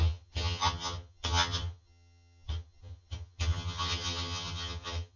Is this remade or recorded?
remade